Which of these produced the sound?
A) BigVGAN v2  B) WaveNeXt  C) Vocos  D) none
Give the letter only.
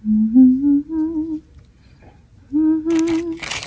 D